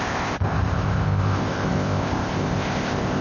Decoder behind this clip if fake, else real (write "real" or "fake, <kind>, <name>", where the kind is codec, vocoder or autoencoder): fake, codec, ZipCodec